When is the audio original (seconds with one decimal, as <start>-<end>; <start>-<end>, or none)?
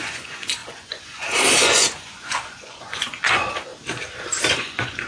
3.7-4.5